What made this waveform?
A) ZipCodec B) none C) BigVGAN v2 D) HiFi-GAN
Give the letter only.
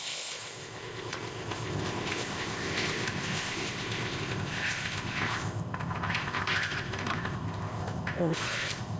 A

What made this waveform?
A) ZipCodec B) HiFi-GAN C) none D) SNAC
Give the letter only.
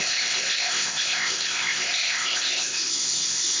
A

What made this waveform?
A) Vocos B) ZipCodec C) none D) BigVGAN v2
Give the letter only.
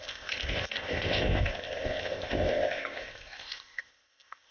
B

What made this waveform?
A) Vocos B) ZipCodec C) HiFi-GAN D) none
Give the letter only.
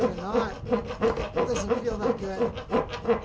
D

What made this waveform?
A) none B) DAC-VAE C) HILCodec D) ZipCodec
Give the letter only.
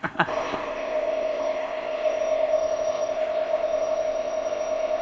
D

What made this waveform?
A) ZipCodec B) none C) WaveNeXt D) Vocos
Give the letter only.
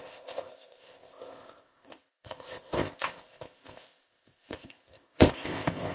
A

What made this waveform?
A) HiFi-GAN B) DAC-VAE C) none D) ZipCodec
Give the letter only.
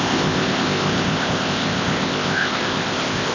D